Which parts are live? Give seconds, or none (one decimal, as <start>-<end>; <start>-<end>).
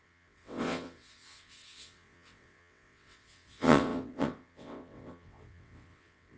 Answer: none